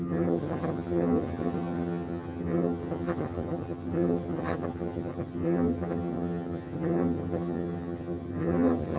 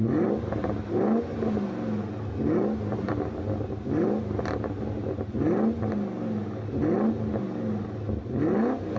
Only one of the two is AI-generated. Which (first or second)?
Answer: first